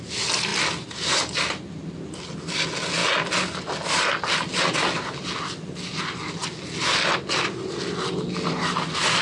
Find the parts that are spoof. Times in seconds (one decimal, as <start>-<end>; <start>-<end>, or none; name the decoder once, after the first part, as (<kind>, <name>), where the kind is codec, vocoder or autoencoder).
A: none